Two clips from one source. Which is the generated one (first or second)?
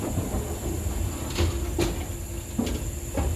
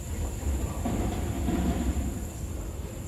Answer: second